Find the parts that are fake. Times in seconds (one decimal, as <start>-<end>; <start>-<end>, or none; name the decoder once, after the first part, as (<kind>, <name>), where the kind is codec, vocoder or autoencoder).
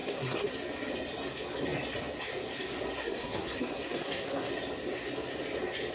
0.0-0.5 (codec, SNAC); 3.0-4.5